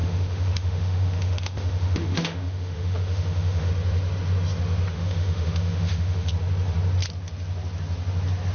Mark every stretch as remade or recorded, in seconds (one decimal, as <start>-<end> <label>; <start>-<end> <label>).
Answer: 0.0-3.7 remade; 3.7-4.9 recorded; 4.9-6.3 remade; 6.3-8.5 recorded